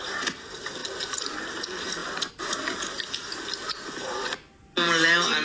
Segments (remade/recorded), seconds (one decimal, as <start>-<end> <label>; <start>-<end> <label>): 0.0-5.4 recorded